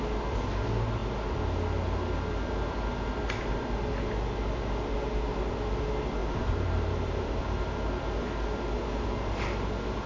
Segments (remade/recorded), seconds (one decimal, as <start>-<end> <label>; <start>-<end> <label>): 0.0-6.2 recorded; 6.2-7.4 remade; 7.4-10.1 recorded